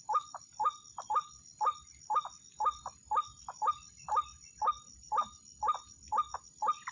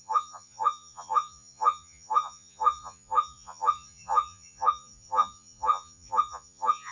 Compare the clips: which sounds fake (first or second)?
second